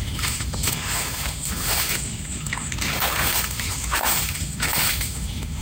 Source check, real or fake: fake